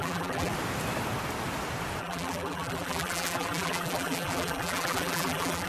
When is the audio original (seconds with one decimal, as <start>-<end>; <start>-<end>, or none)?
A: 0.5-2.0